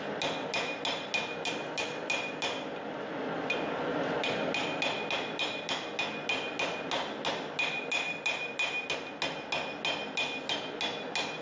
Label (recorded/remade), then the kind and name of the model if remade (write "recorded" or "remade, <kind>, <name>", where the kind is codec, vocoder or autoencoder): recorded